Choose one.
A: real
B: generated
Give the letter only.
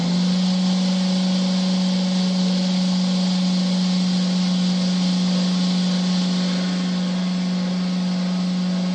A